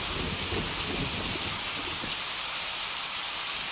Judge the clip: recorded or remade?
recorded